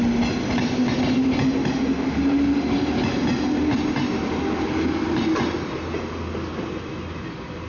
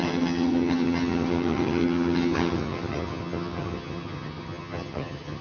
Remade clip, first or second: second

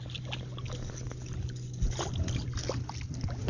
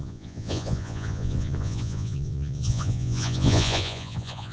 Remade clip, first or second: second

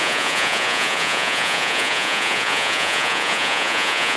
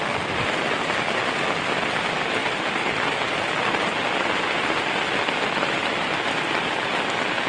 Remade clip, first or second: first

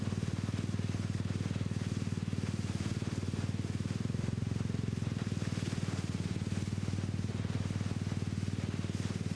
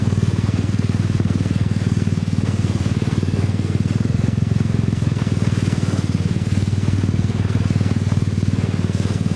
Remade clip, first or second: second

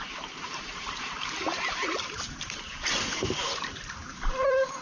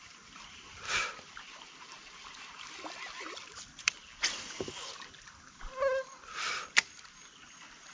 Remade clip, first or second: first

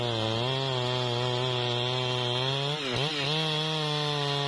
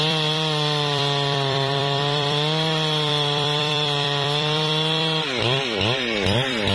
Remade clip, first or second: second